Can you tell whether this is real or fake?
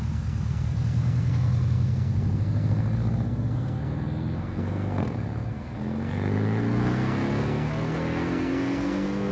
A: fake